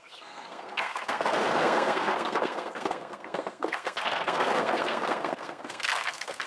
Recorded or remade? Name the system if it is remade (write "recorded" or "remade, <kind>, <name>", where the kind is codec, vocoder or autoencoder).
remade, codec, SNAC